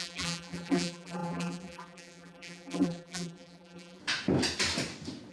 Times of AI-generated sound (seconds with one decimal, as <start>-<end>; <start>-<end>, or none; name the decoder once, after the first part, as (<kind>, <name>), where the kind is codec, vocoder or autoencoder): 0.0-4.0 (vocoder, BigVGAN v2)